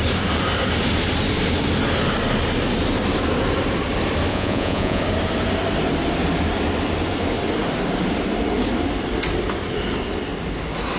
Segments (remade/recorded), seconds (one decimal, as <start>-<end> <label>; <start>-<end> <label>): 0.0-4.3 recorded; 4.3-5.0 remade; 5.0-11.0 recorded